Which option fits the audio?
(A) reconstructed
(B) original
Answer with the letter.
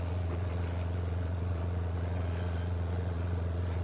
A